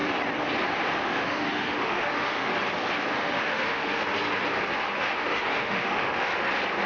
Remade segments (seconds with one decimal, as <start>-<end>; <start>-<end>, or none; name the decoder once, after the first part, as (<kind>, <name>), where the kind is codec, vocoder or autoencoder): 1.0-2.5 (autoencoder, DAC-VAE); 3.1-4.0; 5.0-6.3